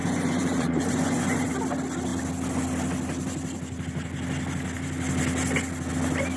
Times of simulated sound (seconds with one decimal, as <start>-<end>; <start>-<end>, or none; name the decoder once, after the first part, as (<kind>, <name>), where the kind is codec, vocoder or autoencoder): 0.0-1.5 (vocoder, Vocos)

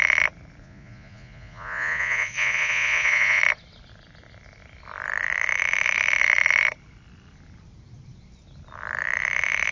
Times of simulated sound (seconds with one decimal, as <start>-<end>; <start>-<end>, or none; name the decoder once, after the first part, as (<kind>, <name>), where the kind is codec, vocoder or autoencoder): 0.6-3.4 (vocoder, Vocos)

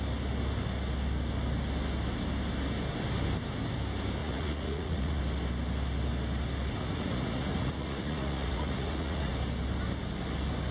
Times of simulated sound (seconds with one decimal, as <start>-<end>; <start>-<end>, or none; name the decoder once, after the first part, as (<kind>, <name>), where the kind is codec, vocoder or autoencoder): 4.2-5.2 (vocoder, Vocos); 6.8-9.3

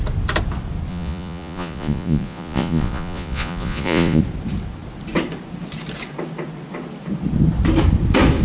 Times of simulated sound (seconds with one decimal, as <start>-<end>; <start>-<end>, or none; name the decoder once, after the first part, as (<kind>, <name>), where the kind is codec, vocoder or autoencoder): 0.9-4.2 (vocoder, Vocos)

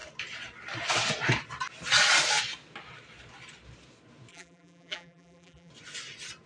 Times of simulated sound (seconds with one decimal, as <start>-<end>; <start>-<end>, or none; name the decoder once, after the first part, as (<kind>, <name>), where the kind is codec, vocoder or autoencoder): 4.3-5.7 (vocoder, BigVGAN v2)

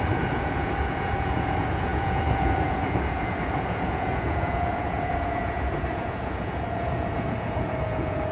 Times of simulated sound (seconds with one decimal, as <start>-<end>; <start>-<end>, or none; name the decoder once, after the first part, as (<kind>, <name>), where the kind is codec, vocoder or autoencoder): 0.0-8.3 (vocoder, Vocos)